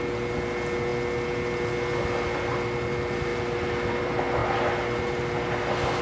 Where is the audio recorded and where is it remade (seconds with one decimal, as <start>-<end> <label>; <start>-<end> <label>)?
0.0-6.0 recorded